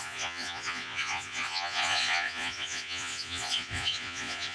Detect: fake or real fake